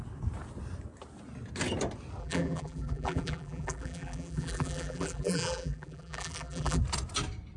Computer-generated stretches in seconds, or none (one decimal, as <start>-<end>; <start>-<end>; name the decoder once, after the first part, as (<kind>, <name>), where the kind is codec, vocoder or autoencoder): 2.2-6.8 (vocoder, BigVGAN v2)